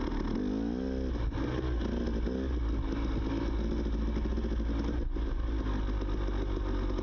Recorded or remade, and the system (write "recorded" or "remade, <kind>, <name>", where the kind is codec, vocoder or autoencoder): recorded